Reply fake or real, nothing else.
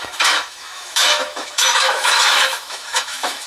fake